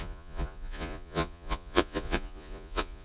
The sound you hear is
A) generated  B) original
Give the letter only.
A